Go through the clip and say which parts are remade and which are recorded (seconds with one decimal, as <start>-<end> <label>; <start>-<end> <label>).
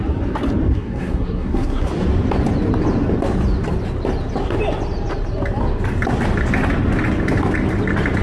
0.0-0.7 recorded; 0.7-1.9 remade; 1.9-8.2 recorded